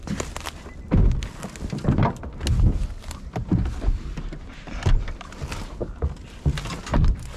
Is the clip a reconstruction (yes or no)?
no